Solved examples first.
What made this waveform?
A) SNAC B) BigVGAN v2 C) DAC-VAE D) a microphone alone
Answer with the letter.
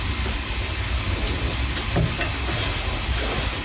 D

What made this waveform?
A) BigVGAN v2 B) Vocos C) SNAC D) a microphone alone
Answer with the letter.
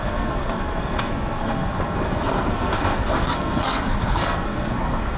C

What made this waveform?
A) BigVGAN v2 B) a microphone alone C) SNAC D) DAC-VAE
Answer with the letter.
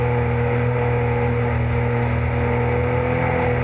B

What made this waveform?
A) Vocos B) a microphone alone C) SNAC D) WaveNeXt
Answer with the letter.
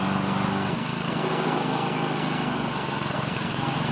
C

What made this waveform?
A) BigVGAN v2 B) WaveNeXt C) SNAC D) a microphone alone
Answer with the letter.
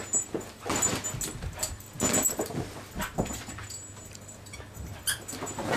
D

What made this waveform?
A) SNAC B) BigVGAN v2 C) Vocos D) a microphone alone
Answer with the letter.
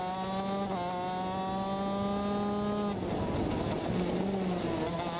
D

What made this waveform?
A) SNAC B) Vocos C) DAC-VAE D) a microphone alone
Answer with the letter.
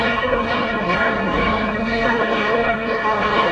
A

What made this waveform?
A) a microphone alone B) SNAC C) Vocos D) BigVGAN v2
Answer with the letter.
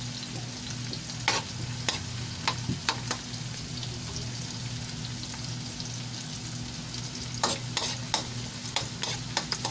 A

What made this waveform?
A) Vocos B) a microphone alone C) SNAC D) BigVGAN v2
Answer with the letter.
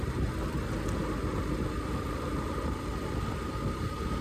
B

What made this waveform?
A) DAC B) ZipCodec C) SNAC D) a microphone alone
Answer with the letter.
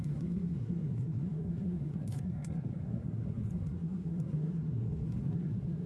C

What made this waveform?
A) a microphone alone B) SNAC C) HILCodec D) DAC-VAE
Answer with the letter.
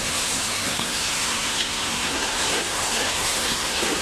B